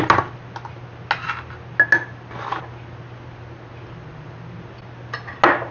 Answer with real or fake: real